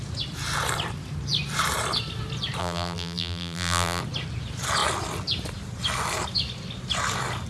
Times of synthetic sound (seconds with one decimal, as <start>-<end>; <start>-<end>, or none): 2.6-4.0

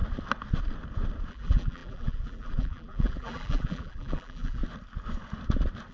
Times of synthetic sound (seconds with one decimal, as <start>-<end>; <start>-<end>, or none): 1.3-4.6

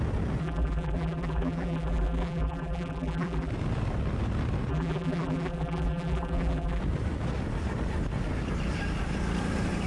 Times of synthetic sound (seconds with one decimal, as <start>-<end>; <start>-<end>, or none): 0.4-3.5; 4.7-6.8